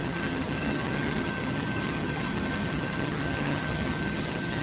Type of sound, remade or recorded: remade